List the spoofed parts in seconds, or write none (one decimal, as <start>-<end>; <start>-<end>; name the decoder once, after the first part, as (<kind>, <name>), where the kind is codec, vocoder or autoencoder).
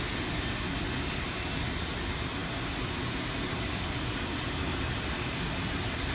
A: none